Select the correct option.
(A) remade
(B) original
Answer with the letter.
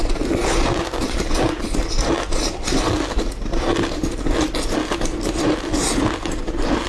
B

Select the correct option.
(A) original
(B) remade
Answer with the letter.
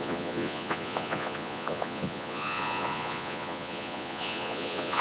B